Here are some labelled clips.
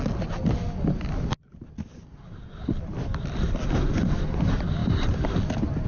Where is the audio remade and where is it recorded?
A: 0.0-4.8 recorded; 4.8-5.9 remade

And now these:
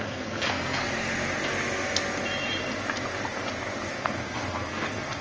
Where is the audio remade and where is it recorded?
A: 0.0-0.8 remade; 0.8-3.9 recorded; 3.9-5.2 remade